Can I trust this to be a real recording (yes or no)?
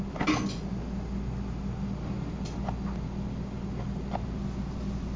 yes